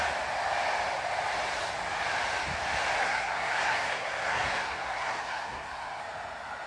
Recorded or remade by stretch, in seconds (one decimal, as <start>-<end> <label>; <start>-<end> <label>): 0.0-3.0 recorded; 3.0-6.0 remade; 6.0-6.7 recorded